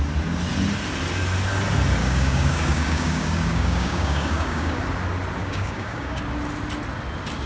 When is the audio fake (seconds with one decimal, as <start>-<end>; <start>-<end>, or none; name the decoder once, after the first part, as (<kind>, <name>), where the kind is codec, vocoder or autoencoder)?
2.0-4.8 (codec, DAC); 5.4-6.2